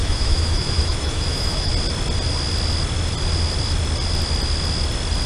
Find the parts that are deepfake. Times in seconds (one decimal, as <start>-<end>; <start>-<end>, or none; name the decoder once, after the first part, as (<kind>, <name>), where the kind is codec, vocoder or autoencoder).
0.0-1.7 (autoencoder, DAC-VAE)